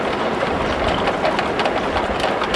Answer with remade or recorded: recorded